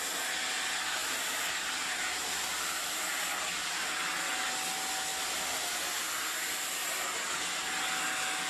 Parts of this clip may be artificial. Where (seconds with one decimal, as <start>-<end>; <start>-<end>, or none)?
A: 1.0-3.9; 5.1-5.7